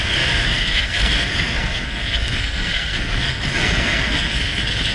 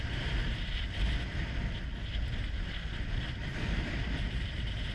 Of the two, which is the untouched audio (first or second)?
second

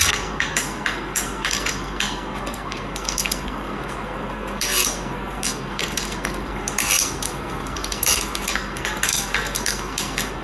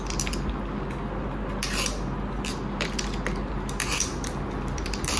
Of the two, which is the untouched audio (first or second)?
second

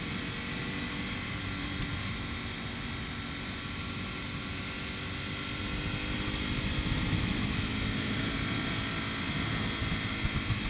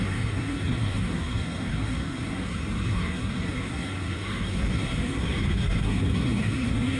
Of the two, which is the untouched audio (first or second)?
first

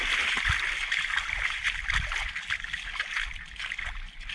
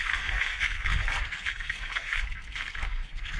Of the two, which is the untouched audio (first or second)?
first